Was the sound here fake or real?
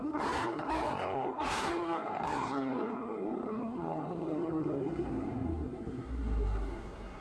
fake